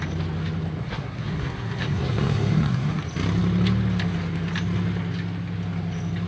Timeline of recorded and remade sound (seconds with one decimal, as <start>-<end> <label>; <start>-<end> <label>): 0.0-0.8 recorded; 0.8-3.0 remade; 3.0-6.3 recorded